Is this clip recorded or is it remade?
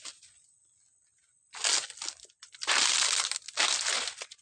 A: recorded